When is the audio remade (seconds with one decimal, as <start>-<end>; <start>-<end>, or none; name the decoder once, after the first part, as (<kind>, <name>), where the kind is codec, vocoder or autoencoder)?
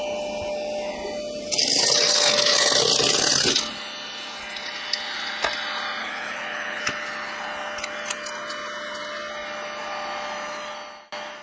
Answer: 6.0-6.8 (codec, HILCodec)